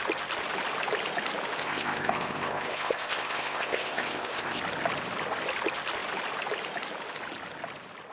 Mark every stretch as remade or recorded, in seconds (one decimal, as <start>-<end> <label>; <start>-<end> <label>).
0.0-1.6 recorded; 1.6-4.6 remade; 4.6-8.1 recorded